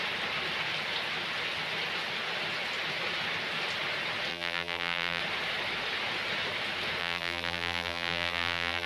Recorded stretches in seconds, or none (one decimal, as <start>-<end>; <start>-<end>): 0.0-4.3; 5.2-7.0